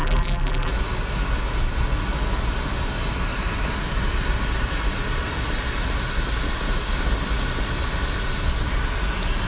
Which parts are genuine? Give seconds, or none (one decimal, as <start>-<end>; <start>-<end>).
0.7-9.5